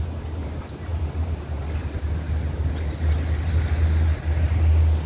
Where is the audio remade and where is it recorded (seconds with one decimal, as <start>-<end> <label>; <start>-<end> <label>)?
0.0-5.1 recorded

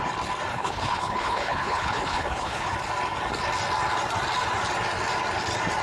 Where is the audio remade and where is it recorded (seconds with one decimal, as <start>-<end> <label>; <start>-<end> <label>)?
0.0-0.5 recorded; 0.5-2.7 remade; 2.7-5.8 recorded

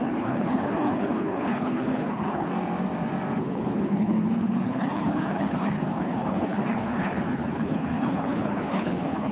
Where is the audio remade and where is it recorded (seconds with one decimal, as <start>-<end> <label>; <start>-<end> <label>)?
0.0-2.5 remade; 2.5-3.4 recorded; 3.4-9.3 remade

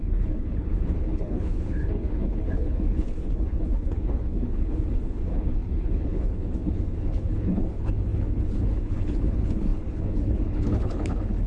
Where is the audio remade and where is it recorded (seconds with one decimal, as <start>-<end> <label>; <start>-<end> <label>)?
0.0-11.5 remade